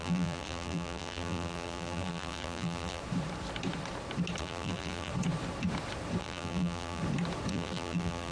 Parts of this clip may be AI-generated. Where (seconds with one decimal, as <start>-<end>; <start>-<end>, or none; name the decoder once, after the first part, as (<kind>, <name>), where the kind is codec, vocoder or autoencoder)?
0.0-3.0 (vocoder, BigVGAN v2); 4.4-5.1; 6.2-7.0; 7.5-8.3